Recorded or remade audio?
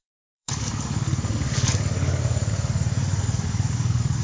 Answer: remade